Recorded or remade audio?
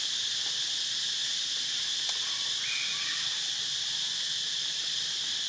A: recorded